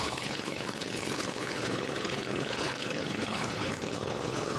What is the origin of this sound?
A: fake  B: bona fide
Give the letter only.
A